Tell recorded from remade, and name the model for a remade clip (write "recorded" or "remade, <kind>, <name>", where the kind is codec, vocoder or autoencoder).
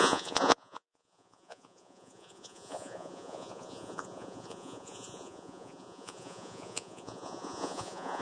remade, vocoder, Vocos